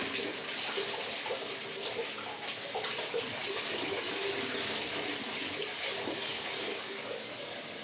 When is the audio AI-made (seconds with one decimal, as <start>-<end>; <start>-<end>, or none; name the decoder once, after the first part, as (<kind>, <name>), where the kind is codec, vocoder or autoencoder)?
3.4-4.4 (codec, DAC); 5.2-7.8